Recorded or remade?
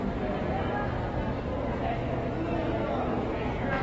recorded